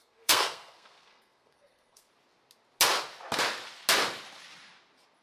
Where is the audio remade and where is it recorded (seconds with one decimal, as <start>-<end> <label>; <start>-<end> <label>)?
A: 0.0-2.1 remade; 2.1-5.2 recorded